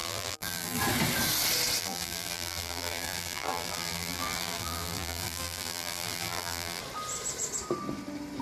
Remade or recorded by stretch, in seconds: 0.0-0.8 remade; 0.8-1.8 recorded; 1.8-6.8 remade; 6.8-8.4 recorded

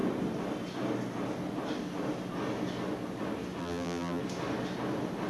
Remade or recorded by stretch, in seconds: 0.0-3.6 recorded; 3.6-4.2 remade; 4.2-5.3 recorded

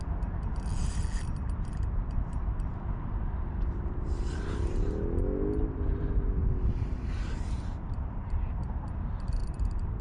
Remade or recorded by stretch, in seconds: 0.0-9.4 recorded; 9.4-10.0 remade

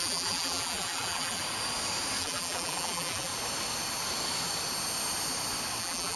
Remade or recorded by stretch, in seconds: 0.0-1.4 remade; 1.4-2.2 recorded; 2.2-3.3 remade; 3.3-5.8 recorded; 5.8-6.2 remade

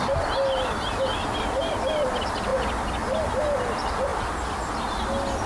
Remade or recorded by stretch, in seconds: 0.0-4.1 recorded; 4.1-4.9 remade; 4.9-5.5 recorded

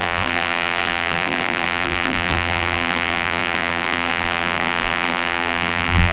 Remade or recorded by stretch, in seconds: 0.0-6.1 remade